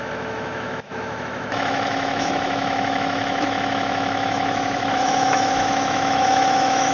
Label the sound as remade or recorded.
remade